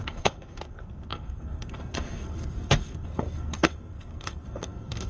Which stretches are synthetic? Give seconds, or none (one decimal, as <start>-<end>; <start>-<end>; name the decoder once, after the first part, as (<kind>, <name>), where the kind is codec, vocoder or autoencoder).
0.0-5.1 (codec, SNAC)